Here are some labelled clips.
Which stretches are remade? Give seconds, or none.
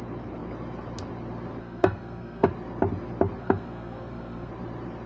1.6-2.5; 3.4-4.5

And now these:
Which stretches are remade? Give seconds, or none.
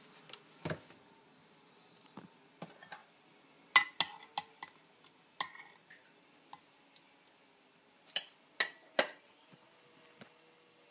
none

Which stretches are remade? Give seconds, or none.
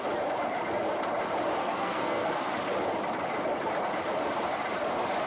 1.6-2.5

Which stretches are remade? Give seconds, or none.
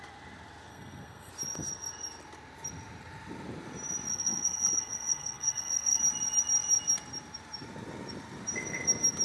0.7-1.3; 4.1-6.0